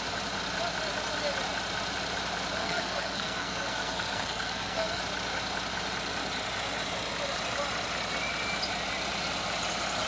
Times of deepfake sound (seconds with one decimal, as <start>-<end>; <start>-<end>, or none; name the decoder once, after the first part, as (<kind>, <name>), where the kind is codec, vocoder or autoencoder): 2.6-5.0 (codec, SNAC)

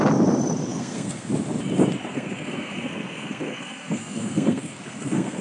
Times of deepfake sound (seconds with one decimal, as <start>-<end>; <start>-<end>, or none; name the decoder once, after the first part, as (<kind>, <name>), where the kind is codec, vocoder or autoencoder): 0.7-1.3 (codec, SNAC); 2.1-5.4

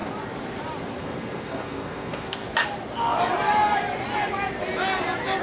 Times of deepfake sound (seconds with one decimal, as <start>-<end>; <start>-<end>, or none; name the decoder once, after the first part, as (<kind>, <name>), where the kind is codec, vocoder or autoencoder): 1.0-2.4 (codec, SNAC)